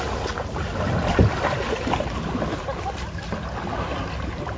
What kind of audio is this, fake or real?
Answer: real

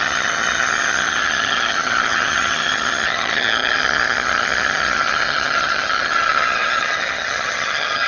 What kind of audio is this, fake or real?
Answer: fake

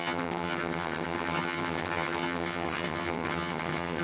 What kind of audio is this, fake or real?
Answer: fake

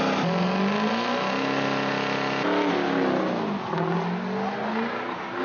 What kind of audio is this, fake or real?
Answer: real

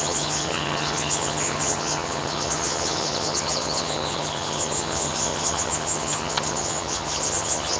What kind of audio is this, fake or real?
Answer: fake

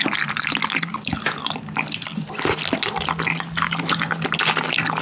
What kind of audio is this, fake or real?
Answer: real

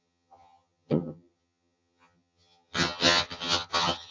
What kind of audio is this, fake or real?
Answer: fake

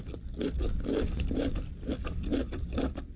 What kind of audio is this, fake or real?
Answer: real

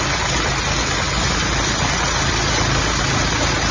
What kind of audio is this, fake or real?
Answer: real